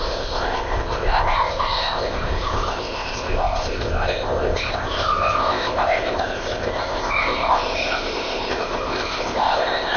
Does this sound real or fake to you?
fake